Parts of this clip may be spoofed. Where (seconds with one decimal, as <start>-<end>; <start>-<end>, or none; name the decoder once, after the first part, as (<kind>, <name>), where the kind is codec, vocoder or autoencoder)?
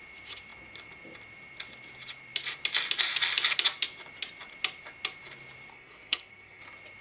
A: 5.7-6.6 (codec, SNAC)